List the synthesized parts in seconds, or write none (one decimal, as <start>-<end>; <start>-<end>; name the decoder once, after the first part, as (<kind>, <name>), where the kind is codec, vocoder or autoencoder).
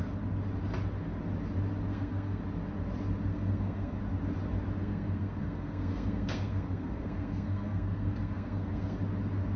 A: 1.9-2.4 (codec, SNAC); 3.3-4.0; 4.8-9.0